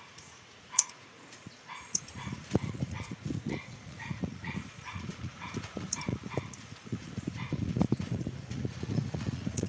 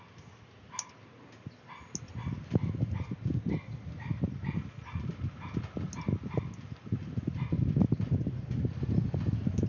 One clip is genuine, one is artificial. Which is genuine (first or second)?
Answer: second